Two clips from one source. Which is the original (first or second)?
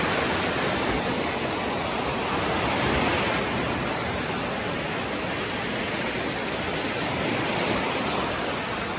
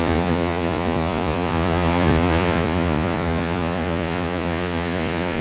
first